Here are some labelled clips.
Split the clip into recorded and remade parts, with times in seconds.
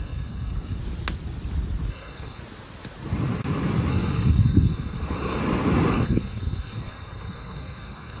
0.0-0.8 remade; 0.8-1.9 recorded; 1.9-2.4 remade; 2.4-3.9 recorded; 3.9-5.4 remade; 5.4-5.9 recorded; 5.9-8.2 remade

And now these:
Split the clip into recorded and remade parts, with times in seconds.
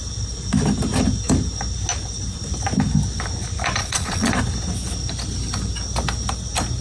0.0-3.8 recorded; 3.8-4.3 remade; 4.3-6.8 recorded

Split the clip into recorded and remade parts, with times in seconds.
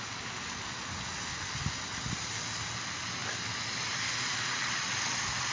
0.0-5.5 recorded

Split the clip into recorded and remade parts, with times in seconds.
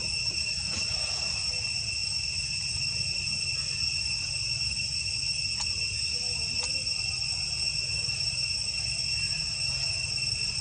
0.0-10.6 recorded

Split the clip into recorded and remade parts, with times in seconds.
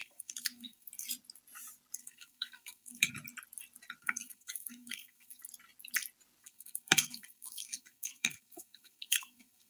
0.0-0.9 remade; 0.9-2.0 recorded; 2.0-3.1 remade; 3.1-4.0 recorded; 4.0-5.4 remade; 5.4-6.4 recorded; 6.4-9.7 remade